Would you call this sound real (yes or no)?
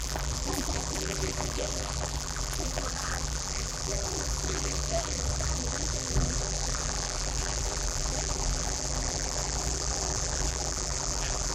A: no